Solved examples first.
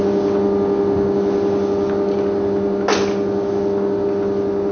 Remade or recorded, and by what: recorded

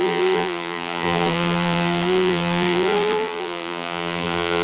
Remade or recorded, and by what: remade, vocoder, BigVGAN v2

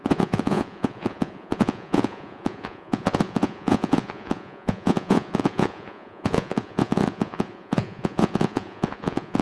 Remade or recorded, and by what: remade, vocoder, Vocos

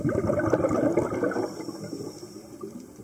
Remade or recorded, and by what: remade, vocoder, BigVGAN v2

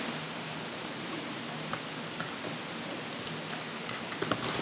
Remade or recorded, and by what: recorded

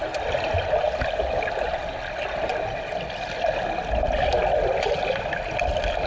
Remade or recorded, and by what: recorded